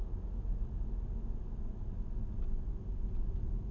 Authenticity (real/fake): real